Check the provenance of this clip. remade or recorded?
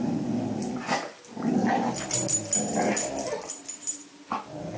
recorded